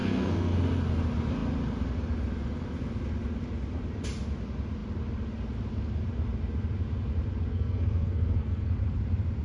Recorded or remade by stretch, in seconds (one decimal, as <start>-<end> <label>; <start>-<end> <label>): 0.0-0.6 remade; 0.6-7.5 recorded; 7.5-8.7 remade; 8.7-9.4 recorded